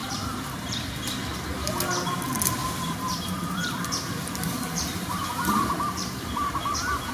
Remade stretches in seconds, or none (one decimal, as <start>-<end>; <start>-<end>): 0.0-0.9; 2.6-7.1